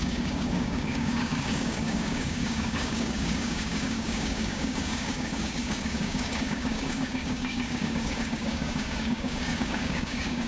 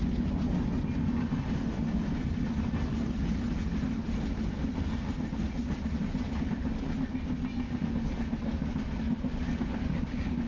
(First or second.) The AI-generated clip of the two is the first